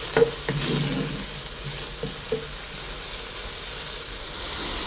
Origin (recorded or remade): recorded